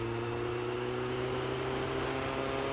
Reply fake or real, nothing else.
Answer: real